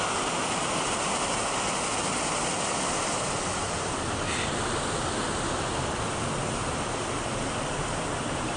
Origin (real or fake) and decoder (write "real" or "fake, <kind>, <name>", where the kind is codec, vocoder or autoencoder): real